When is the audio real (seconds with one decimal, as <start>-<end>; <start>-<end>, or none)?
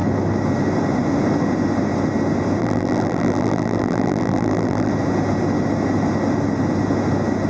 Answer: 0.0-2.6; 4.9-7.5